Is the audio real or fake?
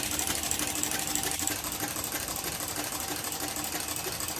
real